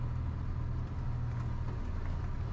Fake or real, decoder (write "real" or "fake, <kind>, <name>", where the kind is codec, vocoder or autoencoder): real